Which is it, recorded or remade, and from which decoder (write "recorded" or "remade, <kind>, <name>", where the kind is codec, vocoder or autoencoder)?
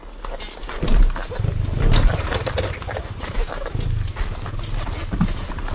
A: recorded